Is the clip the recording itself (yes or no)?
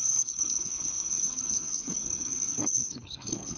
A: no